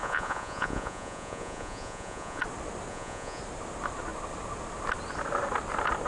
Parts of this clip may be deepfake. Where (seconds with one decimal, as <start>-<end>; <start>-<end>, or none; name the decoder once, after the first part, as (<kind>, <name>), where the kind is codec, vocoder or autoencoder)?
0.0-2.4 (vocoder, Vocos); 2.9-3.4